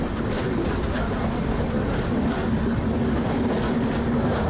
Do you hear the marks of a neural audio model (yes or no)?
no